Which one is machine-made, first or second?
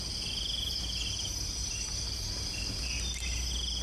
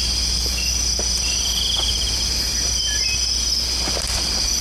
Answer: first